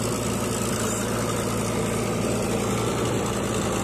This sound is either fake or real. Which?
real